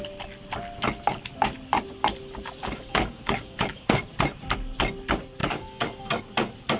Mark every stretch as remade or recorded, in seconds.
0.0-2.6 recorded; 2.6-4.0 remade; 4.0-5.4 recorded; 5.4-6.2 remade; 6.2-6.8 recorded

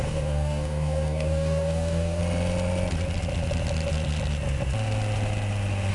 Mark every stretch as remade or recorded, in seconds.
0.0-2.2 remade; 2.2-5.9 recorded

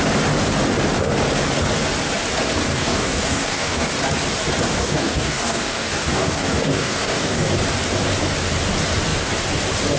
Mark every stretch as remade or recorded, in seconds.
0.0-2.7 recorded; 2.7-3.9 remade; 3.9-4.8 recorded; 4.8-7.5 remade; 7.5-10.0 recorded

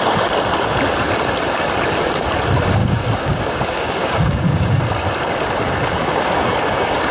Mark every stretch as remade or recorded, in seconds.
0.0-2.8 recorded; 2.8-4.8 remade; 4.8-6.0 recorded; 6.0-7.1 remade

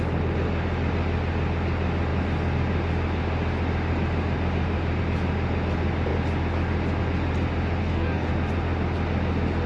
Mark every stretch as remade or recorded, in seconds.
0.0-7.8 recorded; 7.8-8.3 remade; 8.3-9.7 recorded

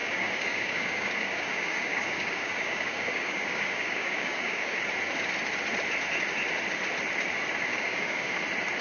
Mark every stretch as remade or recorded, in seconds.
0.0-4.8 remade; 4.8-7.7 recorded; 7.7-8.4 remade; 8.4-8.8 recorded